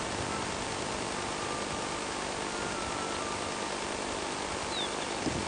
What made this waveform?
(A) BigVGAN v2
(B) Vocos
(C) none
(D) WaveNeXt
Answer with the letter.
C